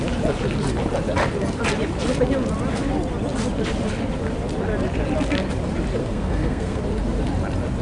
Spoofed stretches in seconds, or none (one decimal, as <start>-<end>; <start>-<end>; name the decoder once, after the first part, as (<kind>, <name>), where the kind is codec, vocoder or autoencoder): 6.0-6.8 (codec, SNAC)

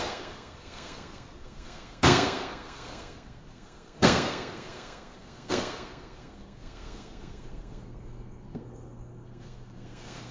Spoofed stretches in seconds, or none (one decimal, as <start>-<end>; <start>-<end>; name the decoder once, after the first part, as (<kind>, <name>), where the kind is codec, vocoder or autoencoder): 0.0-10.3 (codec, SNAC)

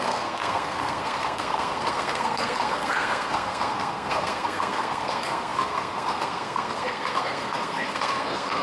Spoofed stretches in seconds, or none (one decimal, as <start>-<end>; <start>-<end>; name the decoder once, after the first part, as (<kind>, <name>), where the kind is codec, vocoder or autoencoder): 0.0-8.6 (codec, SNAC)